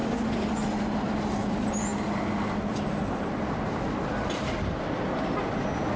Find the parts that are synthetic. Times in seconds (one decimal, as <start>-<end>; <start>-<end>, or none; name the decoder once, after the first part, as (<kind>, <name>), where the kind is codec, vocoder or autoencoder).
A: none